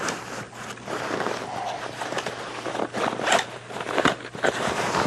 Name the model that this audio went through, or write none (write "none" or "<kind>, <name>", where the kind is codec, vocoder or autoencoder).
none